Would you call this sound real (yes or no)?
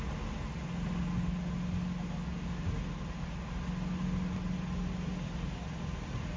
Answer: yes